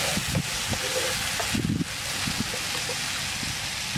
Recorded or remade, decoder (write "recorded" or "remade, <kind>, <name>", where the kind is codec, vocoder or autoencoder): recorded